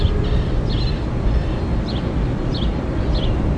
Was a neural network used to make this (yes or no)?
no